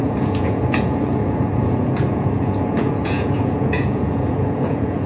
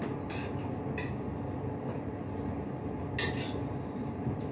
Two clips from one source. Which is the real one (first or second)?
second